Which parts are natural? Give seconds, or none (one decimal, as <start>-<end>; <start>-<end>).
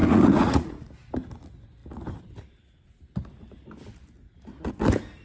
0.9-5.2